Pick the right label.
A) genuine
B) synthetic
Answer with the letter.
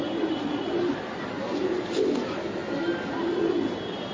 A